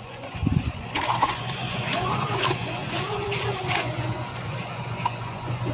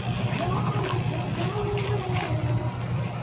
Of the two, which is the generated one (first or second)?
first